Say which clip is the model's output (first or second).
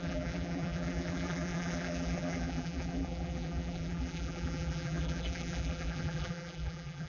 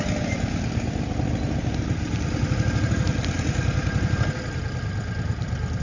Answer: first